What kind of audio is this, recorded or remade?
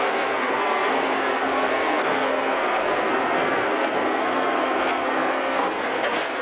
remade